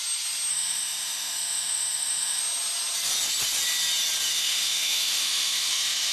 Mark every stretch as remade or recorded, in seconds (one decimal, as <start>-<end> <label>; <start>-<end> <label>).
0.0-0.5 recorded; 0.5-2.4 remade; 2.4-4.3 recorded; 4.3-6.1 remade